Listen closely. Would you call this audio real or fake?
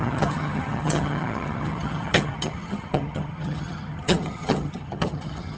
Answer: fake